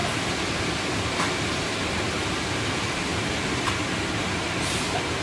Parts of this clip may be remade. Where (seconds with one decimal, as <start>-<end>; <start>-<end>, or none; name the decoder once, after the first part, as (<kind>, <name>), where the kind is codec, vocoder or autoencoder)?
3.1-4.7 (vocoder, BigVGAN v2)